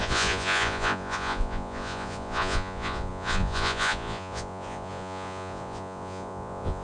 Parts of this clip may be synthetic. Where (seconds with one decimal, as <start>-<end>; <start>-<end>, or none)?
0.0-6.8